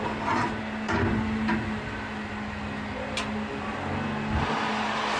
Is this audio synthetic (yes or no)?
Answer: yes